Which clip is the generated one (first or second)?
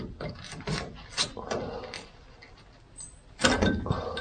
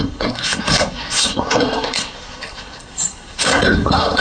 second